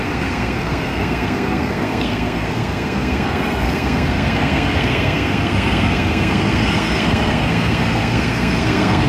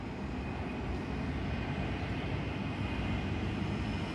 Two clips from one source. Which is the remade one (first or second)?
first